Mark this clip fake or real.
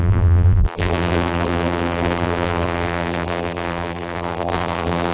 fake